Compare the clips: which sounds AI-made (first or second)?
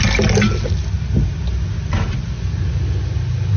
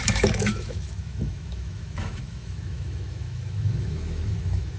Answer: second